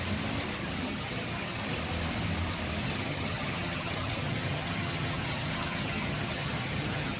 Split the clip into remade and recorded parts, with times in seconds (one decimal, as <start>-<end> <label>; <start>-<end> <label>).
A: 0.0-0.6 recorded; 0.6-1.6 remade; 1.6-2.8 recorded; 2.8-7.2 remade